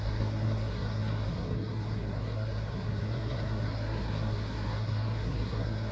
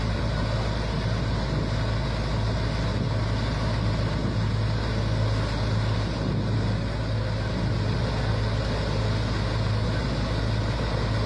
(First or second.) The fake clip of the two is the first